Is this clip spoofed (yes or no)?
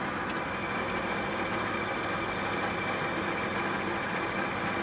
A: no